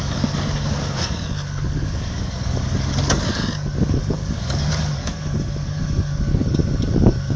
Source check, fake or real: fake